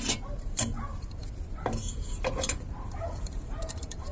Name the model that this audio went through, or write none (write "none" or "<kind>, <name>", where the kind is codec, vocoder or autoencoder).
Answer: vocoder, BigVGAN v2